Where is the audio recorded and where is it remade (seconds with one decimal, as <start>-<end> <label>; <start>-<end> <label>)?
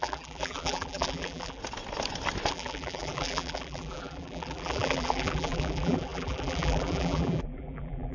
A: 0.0-1.6 remade; 1.6-2.5 recorded; 2.5-8.1 remade